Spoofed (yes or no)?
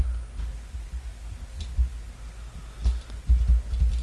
no